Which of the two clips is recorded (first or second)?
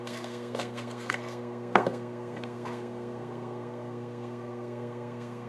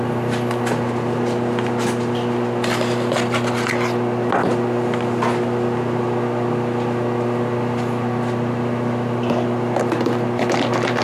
second